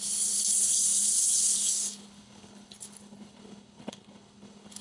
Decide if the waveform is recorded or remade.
remade